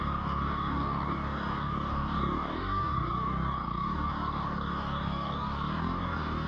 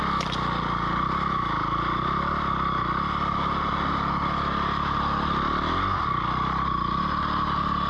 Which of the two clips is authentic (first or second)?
second